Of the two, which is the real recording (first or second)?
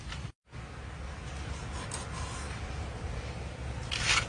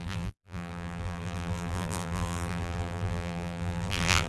first